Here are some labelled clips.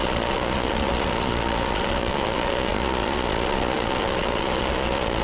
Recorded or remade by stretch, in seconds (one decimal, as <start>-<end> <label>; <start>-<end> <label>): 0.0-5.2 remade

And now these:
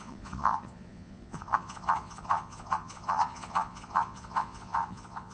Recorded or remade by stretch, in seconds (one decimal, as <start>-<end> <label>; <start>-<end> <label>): 0.0-5.3 remade

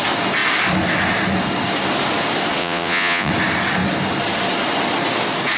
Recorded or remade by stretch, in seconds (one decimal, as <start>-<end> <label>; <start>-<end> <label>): 0.0-2.6 recorded; 2.6-3.3 remade; 3.3-5.6 recorded

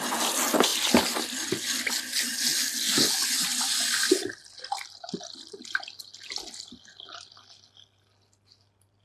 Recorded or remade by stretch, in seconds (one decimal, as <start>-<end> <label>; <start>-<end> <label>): 0.0-9.0 recorded